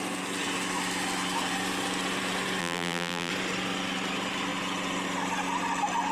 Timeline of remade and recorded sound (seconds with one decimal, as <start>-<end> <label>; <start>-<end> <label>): 0.0-2.6 recorded; 2.6-3.3 remade; 3.3-6.1 recorded